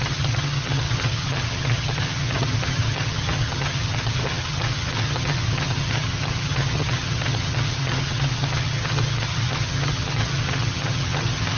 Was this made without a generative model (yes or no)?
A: no